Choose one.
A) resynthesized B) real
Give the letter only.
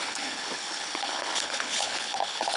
A